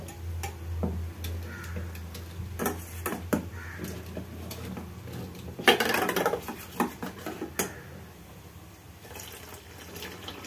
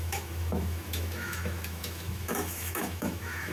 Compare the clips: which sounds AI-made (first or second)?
second